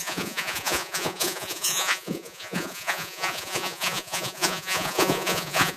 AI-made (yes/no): yes